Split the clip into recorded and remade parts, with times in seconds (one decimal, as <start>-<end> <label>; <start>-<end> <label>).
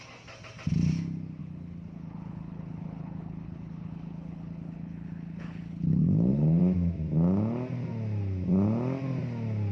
0.0-1.4 recorded; 1.4-6.6 remade; 6.6-9.7 recorded